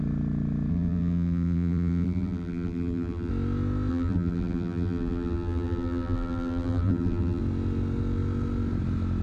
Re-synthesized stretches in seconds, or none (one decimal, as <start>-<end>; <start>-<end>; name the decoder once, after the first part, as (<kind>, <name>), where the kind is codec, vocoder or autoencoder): 0.7-3.3 (vocoder, BigVGAN v2); 3.9-7.4